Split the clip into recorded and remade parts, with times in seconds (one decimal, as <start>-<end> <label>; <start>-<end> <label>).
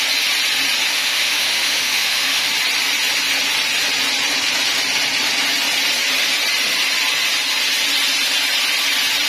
0.0-0.9 recorded; 0.9-2.5 remade; 2.5-9.3 recorded